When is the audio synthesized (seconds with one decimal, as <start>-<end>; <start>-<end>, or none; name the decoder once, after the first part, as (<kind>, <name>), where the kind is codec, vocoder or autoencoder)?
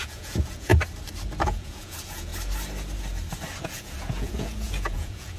0.0-0.7 (vocoder, Vocos); 1.4-2.3; 3.6-5.4